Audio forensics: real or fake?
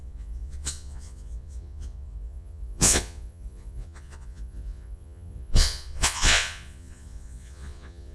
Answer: fake